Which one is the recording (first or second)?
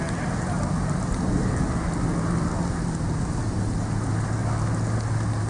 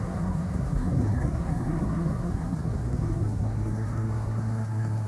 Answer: first